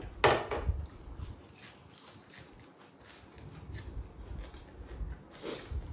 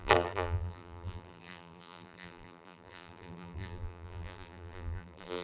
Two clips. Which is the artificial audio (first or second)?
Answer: second